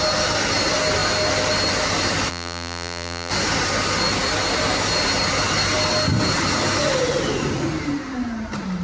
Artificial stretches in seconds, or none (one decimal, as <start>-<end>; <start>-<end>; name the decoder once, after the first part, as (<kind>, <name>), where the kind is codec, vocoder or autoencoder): 2.3-3.3 (vocoder, BigVGAN v2)